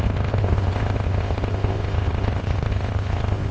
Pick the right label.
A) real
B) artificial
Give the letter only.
B